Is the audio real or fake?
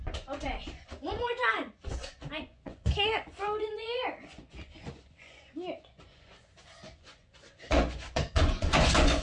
fake